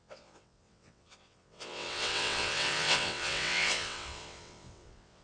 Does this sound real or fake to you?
fake